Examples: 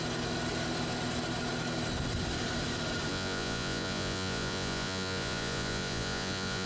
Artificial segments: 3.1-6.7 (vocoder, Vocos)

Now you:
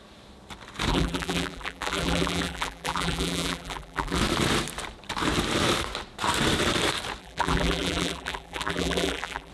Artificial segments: 0.9-4.2 (vocoder, BigVGAN v2); 7.2-9.5

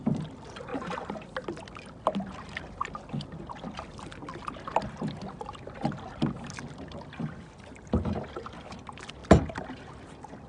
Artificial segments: none

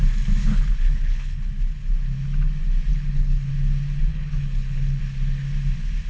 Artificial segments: 0.4-1.5 (codec, HILCodec); 2.9-3.5; 4.1-5.0

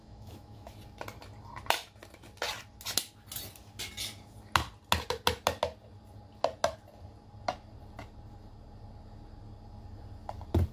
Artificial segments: 0.0-0.7 (autoencoder, DAC-VAE)